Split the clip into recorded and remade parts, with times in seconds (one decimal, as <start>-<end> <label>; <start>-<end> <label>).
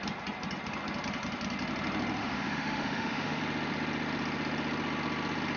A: 0.0-2.2 recorded; 2.2-3.4 remade; 3.4-5.6 recorded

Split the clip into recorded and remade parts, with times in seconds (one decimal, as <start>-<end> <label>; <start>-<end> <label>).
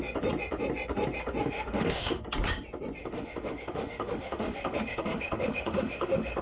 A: 0.0-1.4 recorded; 1.4-2.2 remade; 2.2-3.0 recorded; 3.0-6.4 remade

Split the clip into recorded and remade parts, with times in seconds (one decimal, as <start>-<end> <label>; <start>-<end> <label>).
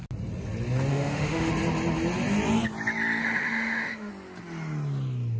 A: 0.0-0.9 recorded; 0.9-1.5 remade; 1.5-3.2 recorded; 3.2-4.1 remade; 4.1-5.4 recorded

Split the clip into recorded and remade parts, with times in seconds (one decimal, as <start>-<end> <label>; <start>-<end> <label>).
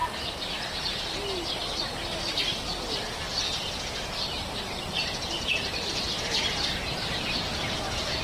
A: 0.0-8.2 recorded